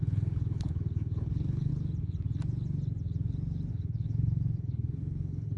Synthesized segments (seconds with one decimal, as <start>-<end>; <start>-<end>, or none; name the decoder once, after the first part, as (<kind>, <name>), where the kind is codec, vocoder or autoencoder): 0.0-1.7 (codec, HILCodec); 3.7-5.6